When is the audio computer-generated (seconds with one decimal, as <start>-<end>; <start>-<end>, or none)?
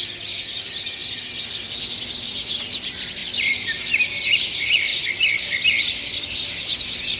none